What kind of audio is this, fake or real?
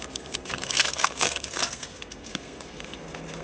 fake